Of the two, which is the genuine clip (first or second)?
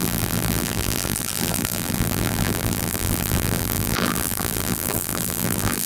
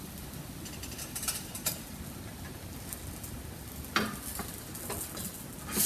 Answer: second